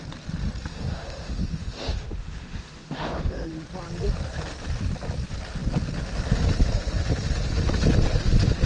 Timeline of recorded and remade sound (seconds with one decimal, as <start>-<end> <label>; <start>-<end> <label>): 0.0-0.7 recorded; 0.7-3.5 remade; 3.5-8.7 recorded